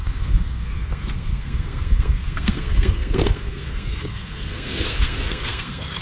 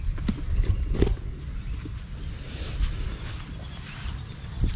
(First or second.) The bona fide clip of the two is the second